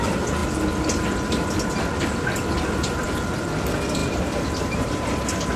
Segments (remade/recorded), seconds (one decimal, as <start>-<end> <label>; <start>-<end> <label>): 0.0-4.0 recorded; 4.0-5.6 remade